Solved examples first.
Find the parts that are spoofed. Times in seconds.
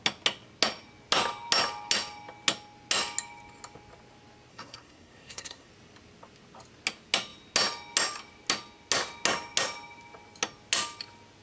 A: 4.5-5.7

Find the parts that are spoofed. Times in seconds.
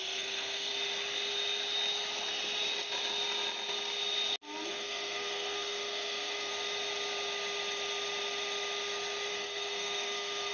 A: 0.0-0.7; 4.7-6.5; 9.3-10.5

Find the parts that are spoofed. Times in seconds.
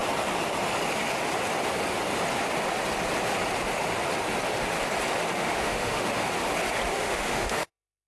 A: 5.4-6.3; 6.9-8.1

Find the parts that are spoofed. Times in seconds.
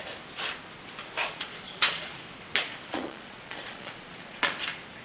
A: 1.2-2.1; 2.9-4.5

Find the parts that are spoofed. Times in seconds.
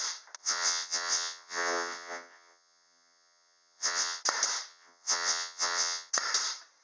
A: 0.4-4.2; 4.7-6.1